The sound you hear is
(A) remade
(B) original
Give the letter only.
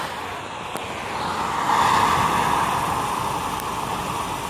B